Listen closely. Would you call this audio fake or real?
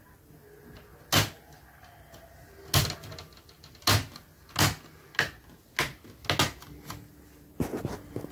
real